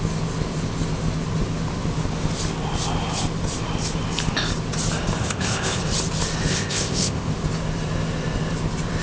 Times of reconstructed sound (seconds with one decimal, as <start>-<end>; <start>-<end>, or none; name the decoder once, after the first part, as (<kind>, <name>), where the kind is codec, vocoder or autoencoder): 5.2-5.8 (codec, ZipCodec); 6.5-7.3